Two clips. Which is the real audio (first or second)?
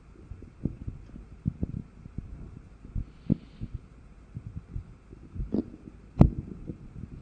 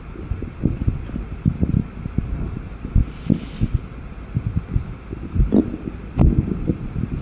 first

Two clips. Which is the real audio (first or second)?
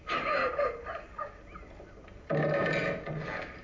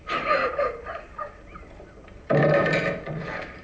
first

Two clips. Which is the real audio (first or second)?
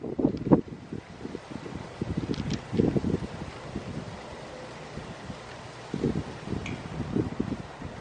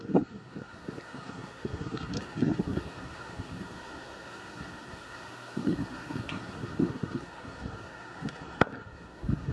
first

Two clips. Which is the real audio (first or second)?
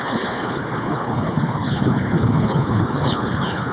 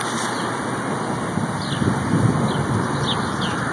second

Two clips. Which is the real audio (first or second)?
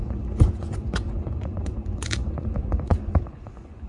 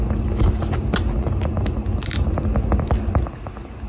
second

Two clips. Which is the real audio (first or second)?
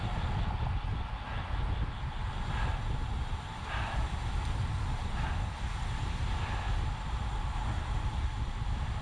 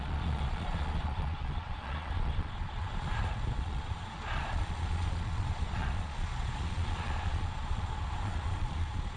first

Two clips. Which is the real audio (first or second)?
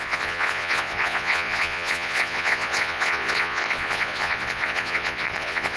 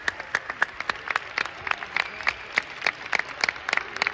second